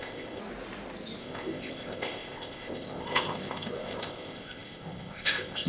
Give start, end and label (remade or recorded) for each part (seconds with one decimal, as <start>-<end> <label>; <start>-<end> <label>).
0.0-0.4 remade; 0.4-1.2 recorded; 1.2-5.7 remade